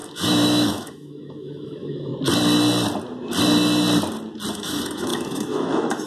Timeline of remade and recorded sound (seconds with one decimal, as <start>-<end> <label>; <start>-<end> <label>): 0.0-2.1 remade; 2.1-4.5 recorded; 4.5-6.1 remade